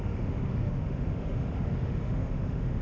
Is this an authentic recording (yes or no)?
no